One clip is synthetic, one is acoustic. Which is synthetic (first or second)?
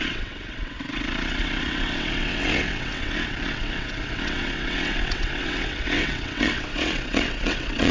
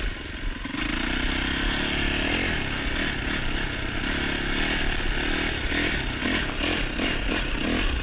first